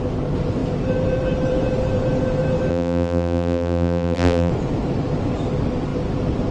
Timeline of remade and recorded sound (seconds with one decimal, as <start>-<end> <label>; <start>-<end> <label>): 0.0-2.7 recorded; 2.7-4.5 remade; 4.5-6.5 recorded